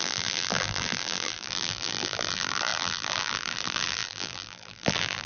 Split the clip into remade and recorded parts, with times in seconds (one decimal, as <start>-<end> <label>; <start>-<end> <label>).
0.0-5.3 remade